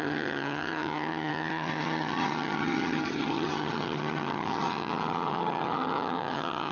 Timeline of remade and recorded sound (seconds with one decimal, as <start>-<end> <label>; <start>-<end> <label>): 0.0-6.7 remade